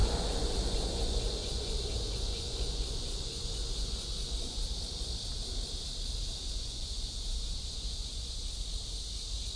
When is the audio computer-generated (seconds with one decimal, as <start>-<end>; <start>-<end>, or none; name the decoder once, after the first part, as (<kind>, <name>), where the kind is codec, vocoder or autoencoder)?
0.0-4.6 (vocoder, Vocos); 6.4-8.4